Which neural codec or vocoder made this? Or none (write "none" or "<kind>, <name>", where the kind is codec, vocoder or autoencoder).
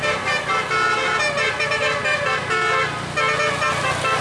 none